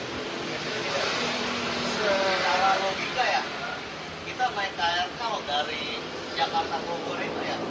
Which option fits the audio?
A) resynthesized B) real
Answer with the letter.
B